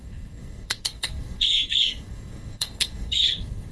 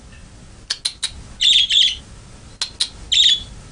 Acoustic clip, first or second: second